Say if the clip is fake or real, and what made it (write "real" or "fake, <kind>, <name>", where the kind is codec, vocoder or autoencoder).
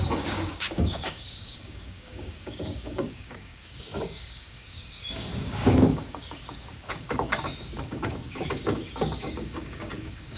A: fake, codec, DAC